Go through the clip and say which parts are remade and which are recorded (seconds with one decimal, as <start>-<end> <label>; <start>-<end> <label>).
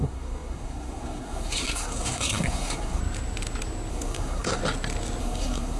0.0-3.0 remade; 3.0-3.9 recorded; 3.9-4.6 remade; 4.6-5.2 recorded; 5.2-5.8 remade